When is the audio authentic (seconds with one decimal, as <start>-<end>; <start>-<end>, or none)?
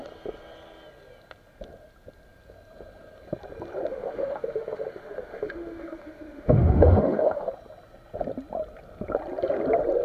0.0-3.9; 7.5-10.0